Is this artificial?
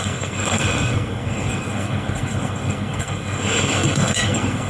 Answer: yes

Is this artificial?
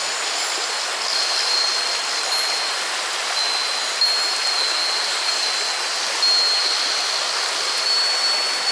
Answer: no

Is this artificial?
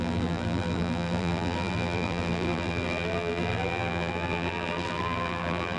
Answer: yes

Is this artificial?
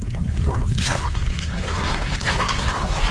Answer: yes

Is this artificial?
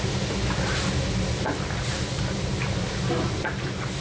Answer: no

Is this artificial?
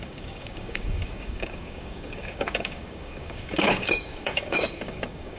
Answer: yes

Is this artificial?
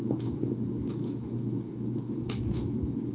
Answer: yes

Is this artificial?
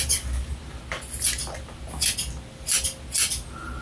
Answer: no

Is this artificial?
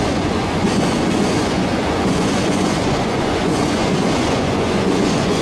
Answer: yes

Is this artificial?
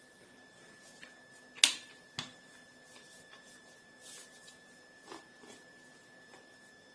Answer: no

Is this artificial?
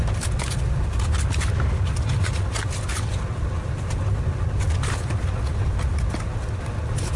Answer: no